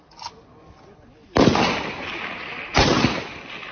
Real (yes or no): yes